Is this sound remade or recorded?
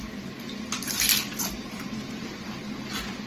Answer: recorded